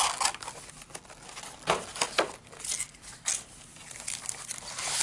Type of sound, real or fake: real